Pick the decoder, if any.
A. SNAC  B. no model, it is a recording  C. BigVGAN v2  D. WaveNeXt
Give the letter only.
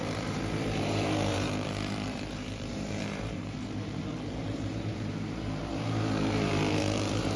C